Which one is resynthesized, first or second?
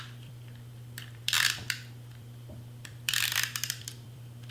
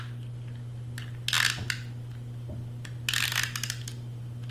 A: first